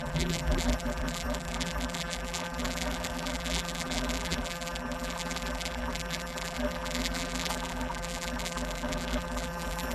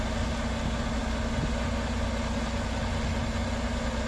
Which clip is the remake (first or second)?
first